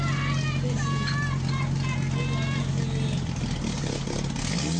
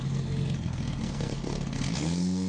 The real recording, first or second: first